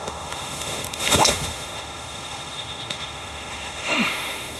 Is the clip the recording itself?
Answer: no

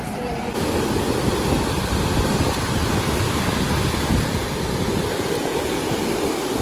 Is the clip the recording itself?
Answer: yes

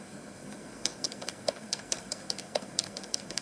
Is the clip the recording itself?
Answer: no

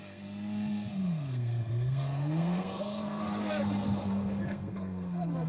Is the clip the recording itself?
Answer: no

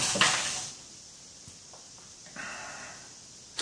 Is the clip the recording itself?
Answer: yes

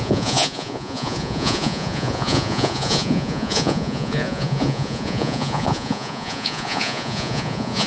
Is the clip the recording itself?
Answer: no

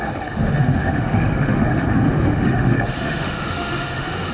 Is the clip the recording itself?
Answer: no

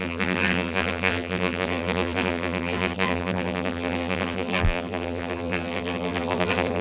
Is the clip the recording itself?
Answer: no